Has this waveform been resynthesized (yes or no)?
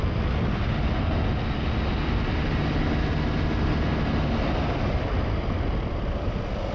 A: no